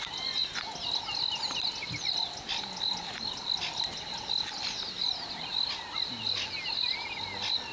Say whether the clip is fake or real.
real